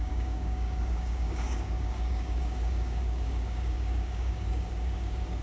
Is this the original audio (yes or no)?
no